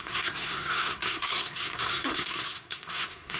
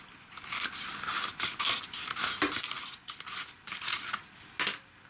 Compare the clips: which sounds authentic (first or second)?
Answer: second